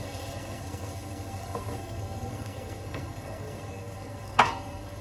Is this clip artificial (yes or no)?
yes